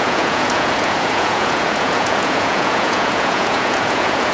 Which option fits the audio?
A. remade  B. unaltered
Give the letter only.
A